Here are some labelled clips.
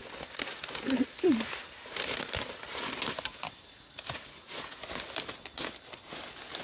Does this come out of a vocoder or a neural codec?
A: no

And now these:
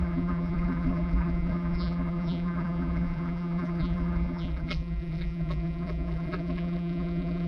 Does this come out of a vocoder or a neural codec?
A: yes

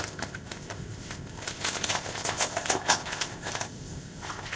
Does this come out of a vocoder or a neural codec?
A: yes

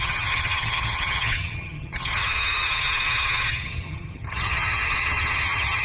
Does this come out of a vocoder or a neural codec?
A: yes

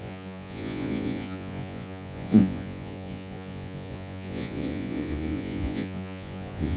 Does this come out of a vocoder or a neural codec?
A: yes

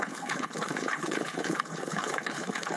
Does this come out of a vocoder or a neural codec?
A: yes